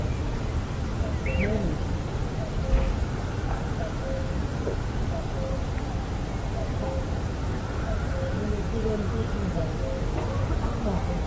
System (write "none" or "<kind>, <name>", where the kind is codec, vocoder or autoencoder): none